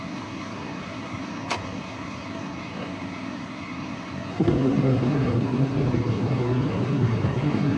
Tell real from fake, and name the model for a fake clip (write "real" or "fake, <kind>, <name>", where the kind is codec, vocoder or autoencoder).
fake, codec, SNAC